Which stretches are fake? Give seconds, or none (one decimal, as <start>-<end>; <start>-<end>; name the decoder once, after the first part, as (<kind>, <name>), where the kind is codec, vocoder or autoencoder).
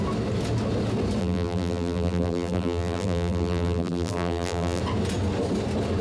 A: 1.2-4.8 (vocoder, BigVGAN v2)